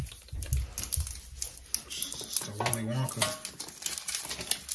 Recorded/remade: recorded